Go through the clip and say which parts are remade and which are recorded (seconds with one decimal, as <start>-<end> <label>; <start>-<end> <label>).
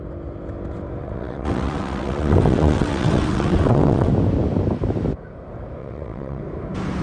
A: 0.0-1.0 recorded; 1.0-4.1 remade; 4.1-5.8 recorded; 5.8-6.4 remade; 6.4-7.0 recorded